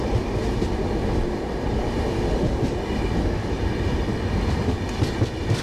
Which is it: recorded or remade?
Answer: recorded